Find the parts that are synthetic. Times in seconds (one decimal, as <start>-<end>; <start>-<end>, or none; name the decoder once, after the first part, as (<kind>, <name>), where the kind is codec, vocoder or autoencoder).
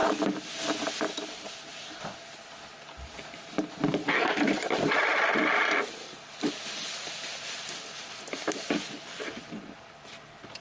0.0-0.5 (vocoder, BigVGAN v2); 5.1-9.5